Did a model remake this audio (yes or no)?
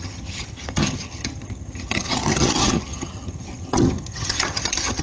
yes